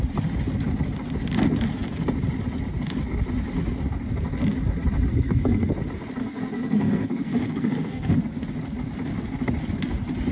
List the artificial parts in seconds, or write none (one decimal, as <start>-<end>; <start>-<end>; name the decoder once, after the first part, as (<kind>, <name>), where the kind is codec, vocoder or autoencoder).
5.1-5.7 (codec, SNAC); 6.2-8.1